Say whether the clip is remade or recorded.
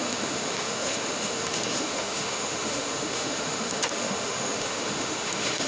remade